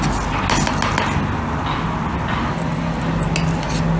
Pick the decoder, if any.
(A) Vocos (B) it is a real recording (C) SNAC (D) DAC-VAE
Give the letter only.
B